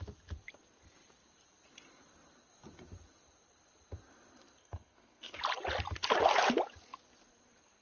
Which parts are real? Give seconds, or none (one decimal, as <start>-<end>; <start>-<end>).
0.0-4.6; 5.4-7.8